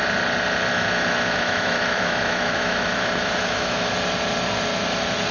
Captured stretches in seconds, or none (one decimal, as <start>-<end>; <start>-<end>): 0.0-0.7; 3.9-5.3